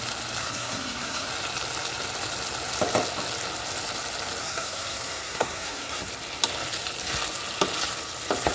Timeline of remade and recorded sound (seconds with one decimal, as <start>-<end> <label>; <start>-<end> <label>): 0.0-0.4 recorded; 0.4-1.3 remade; 1.3-4.4 recorded; 4.4-6.1 remade; 6.1-8.5 recorded